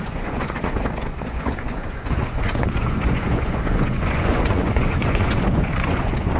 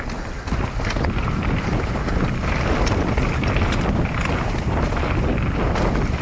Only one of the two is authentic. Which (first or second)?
second